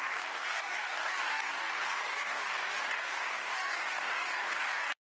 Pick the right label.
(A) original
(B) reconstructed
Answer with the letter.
B